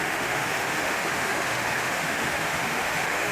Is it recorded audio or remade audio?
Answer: remade